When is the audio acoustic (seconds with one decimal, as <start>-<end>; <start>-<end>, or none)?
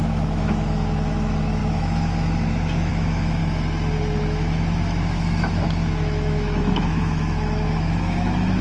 3.4-4.2